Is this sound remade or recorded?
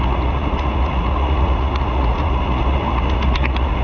remade